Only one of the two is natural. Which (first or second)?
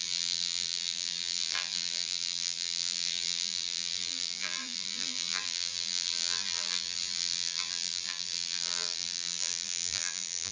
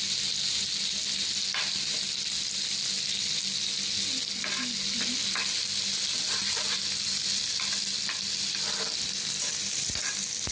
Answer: second